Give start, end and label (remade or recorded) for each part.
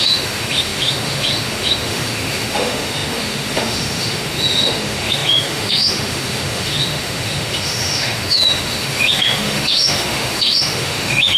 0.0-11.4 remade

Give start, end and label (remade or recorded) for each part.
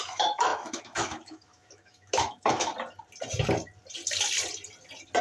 0.0-2.7 remade; 2.7-5.2 recorded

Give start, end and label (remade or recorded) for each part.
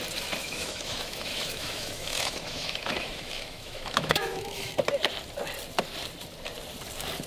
0.0-0.4 recorded; 0.4-4.7 remade; 4.7-7.3 recorded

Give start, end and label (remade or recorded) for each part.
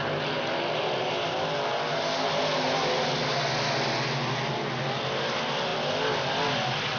0.0-7.0 recorded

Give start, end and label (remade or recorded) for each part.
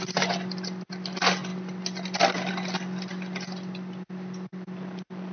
0.0-5.3 recorded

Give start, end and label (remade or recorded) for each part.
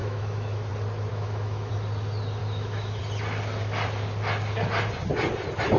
0.0-0.7 remade; 0.7-1.1 recorded; 1.1-1.7 remade; 1.7-2.4 recorded; 2.4-3.0 remade; 3.0-5.8 recorded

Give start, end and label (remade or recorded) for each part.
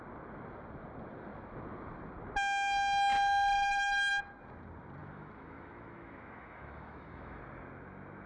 0.0-5.0 recorded; 5.0-7.4 remade; 7.4-8.3 recorded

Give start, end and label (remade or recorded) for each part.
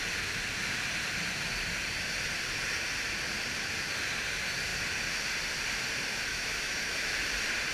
0.0-6.3 recorded; 6.3-7.1 remade; 7.1-7.7 recorded